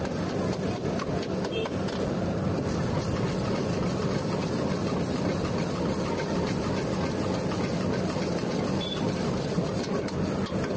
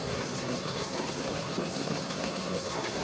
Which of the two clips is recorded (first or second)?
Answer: first